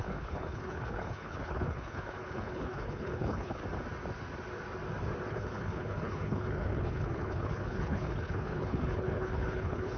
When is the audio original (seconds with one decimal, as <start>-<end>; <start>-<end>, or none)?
3.6-5.3